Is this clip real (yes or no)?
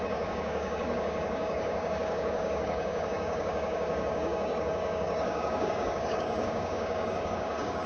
no